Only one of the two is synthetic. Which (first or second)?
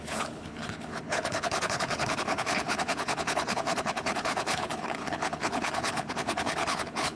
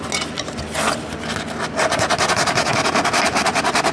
first